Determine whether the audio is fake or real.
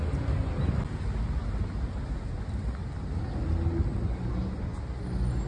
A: real